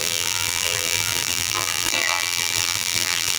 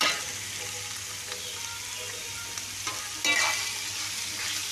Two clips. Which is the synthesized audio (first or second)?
first